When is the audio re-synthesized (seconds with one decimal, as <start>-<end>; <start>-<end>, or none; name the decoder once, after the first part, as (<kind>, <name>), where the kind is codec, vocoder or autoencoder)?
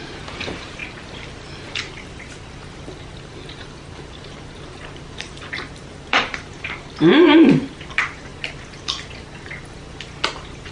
0.0-0.8 (vocoder, BigVGAN v2); 3.2-8.3